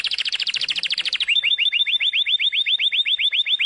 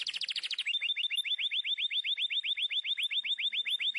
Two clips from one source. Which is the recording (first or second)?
second